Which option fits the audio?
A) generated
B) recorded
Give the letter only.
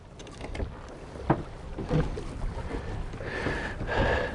B